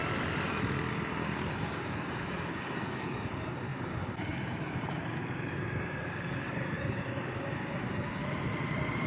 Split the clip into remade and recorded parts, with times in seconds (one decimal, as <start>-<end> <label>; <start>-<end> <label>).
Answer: 0.0-0.9 recorded; 0.9-8.2 remade; 8.2-9.1 recorded